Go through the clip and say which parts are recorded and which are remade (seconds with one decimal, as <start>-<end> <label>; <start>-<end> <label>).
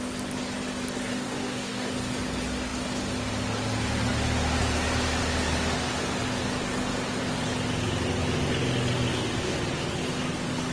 0.0-1.1 recorded; 1.1-1.9 remade; 1.9-9.1 recorded; 9.1-9.6 remade; 9.6-10.7 recorded